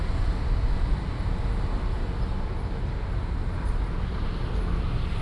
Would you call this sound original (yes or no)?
yes